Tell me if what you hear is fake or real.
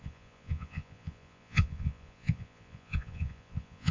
fake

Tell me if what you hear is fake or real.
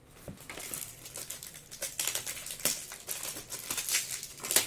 real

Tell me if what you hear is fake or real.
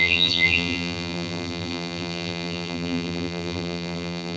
fake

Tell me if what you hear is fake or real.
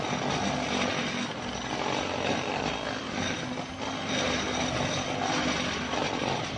real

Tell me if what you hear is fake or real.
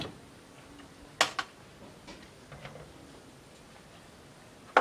real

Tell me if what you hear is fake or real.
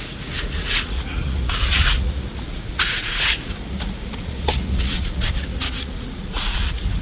fake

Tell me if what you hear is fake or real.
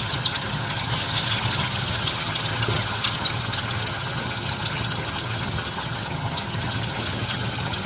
fake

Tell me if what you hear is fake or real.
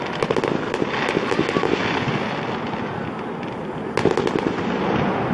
real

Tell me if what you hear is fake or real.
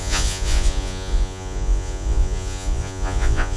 fake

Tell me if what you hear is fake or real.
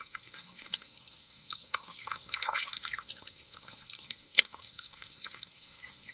fake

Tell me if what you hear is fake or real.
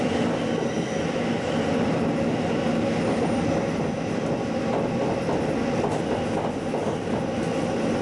real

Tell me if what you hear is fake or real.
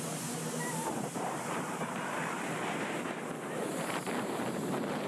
fake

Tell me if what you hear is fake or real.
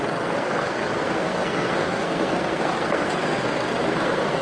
fake